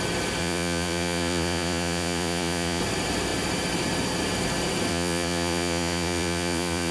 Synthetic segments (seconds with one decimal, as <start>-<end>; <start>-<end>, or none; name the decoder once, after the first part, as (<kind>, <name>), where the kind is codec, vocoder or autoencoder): 0.4-2.8 (vocoder, Vocos); 4.9-6.9